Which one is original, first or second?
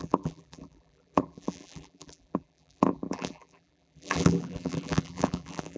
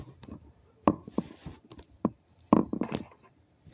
second